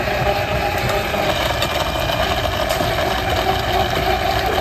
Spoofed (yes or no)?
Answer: no